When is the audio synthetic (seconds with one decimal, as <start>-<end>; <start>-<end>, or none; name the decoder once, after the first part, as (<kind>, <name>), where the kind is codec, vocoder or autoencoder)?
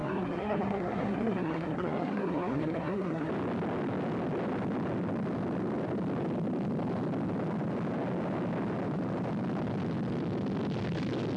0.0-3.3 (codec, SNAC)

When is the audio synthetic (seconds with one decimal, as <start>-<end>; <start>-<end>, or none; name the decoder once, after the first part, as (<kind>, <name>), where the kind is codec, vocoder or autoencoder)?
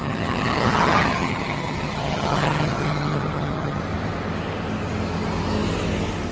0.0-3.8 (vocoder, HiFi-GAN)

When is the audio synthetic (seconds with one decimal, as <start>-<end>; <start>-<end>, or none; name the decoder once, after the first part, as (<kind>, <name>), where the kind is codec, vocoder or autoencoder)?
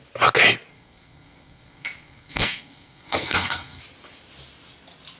0.7-3.8 (codec, SNAC)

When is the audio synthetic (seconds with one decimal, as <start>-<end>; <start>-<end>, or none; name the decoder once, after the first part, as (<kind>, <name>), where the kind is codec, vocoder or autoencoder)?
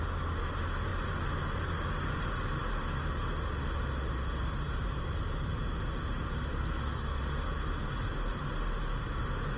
6.5-7.2 (codec, SNAC)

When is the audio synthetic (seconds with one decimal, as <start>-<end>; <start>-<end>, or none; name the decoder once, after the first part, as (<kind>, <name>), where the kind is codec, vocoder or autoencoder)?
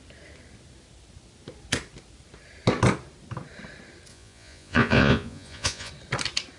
4.1-5.9 (vocoder, Vocos)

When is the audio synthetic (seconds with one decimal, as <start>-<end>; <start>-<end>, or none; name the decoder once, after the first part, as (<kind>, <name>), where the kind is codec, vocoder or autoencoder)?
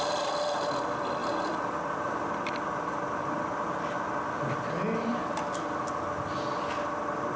1.2-3.8 (vocoder, BigVGAN v2); 5.1-5.9